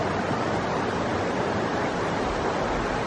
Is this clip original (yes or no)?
yes